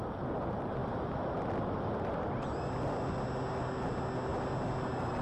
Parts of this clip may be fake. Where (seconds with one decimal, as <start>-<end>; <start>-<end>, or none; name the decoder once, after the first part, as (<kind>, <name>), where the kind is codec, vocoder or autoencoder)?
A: none